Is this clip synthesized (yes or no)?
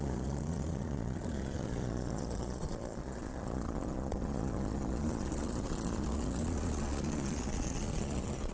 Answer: yes